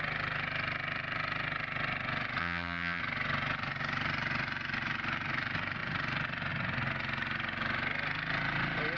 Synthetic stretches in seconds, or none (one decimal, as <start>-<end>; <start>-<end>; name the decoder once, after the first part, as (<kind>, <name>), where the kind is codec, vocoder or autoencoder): 2.4-3.0 (vocoder, HiFi-GAN)